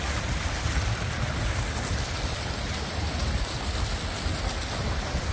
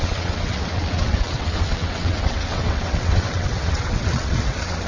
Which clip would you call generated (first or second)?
second